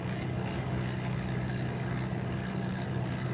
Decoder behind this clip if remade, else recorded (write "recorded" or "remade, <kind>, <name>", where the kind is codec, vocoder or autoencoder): remade, codec, DAC